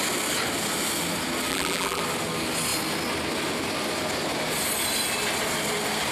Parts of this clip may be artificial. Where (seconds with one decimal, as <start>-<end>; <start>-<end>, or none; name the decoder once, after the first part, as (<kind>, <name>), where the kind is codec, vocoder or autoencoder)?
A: 1.5-2.0 (vocoder, BigVGAN v2)